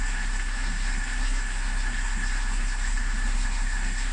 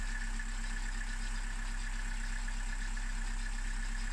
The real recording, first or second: second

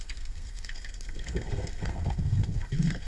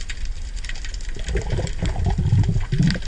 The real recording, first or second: second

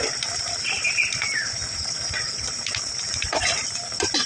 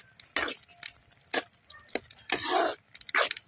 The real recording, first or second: second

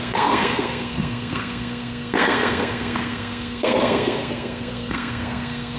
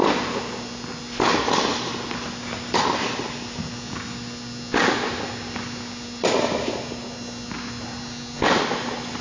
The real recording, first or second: second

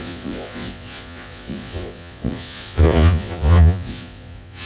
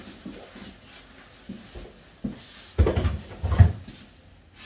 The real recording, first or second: second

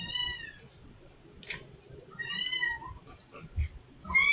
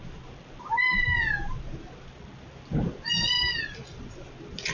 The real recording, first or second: second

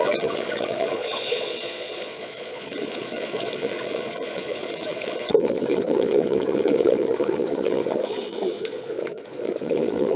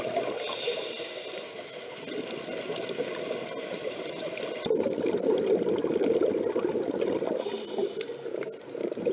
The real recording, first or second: second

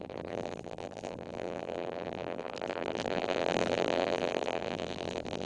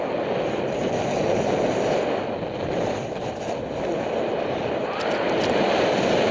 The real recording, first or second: second